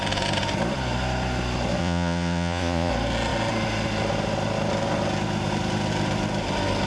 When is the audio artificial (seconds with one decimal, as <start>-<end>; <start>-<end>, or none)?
1.8-2.9

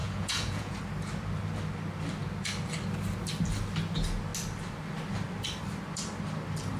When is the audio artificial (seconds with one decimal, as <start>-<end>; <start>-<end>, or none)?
0.0-0.8

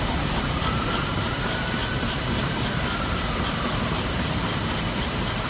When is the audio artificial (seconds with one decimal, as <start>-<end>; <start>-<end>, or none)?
0.0-1.8; 2.3-5.5

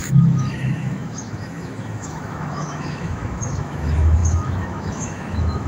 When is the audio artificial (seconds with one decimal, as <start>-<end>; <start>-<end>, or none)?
0.0-5.7

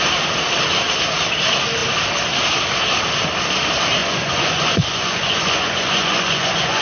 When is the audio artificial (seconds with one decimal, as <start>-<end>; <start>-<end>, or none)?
4.0-6.8

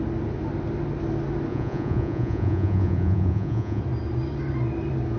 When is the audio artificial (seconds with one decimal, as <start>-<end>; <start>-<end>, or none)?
1.5-3.8